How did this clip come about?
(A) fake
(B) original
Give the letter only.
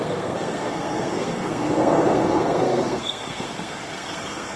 A